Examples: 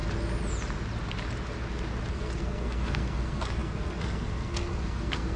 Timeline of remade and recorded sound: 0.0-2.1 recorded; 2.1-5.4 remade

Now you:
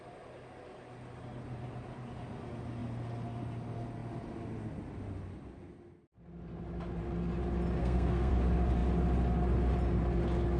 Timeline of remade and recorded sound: 0.0-7.8 recorded; 7.8-8.3 remade; 8.3-10.6 recorded

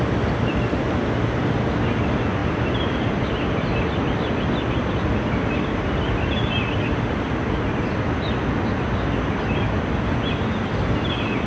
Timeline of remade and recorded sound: 0.0-11.5 recorded

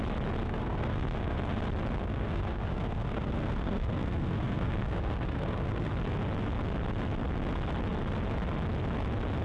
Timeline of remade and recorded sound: 0.0-0.4 recorded; 0.4-1.6 remade; 1.6-2.0 recorded; 2.0-5.9 remade; 5.9-9.4 recorded

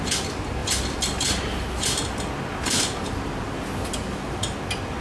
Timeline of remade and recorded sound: 0.0-5.0 recorded